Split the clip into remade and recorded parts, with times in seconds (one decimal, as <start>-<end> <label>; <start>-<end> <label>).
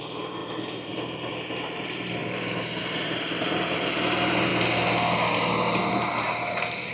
0.0-4.5 remade; 4.5-5.9 recorded; 5.9-6.9 remade